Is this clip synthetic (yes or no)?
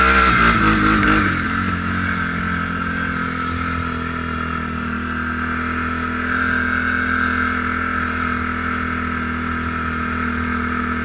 no